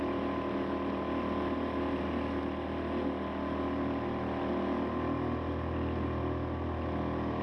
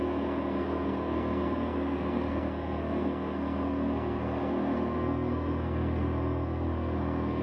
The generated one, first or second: second